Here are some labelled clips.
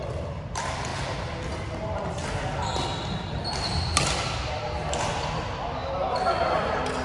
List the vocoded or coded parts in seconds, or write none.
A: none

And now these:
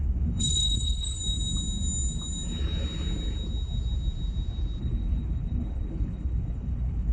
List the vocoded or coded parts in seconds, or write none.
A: 0.0-1.2 (codec, HILCodec); 4.8-7.1

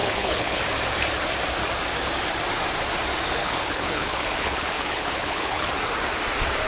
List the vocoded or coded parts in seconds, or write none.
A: 0.0-0.6 (codec, HILCodec); 3.4-5.7